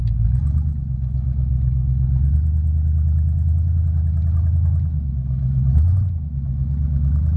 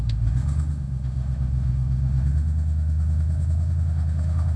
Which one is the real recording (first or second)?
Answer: first